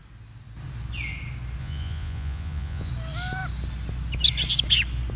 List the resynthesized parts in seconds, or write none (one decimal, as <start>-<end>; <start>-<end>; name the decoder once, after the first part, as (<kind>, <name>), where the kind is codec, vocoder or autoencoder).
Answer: 1.6-2.9 (vocoder, Vocos)